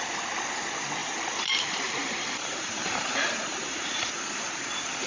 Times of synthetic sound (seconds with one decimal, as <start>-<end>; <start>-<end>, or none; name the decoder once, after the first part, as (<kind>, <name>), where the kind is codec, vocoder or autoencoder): 1.0-4.1 (vocoder, BigVGAN v2)